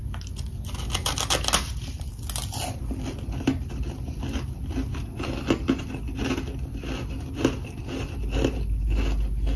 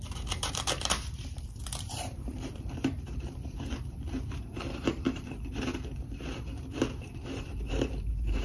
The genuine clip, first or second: first